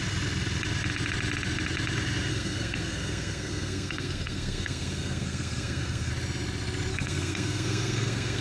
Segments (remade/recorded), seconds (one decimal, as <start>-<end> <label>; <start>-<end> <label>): 0.0-2.3 recorded; 2.3-6.1 remade; 6.1-6.9 recorded; 6.9-8.4 remade

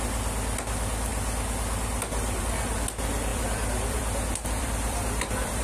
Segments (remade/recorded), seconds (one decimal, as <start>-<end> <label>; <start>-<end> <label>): 0.0-3.3 recorded; 3.3-5.6 remade

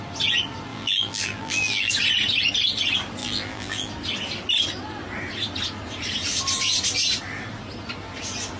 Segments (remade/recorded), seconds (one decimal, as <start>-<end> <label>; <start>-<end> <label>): 0.0-0.7 recorded; 0.7-1.9 remade; 1.9-3.2 recorded; 3.2-3.9 remade; 3.9-8.6 recorded

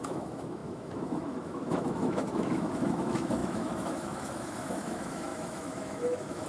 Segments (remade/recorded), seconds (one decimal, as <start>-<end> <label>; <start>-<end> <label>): 0.0-6.5 remade

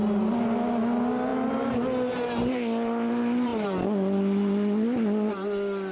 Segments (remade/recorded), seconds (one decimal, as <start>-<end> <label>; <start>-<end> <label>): 0.0-5.9 recorded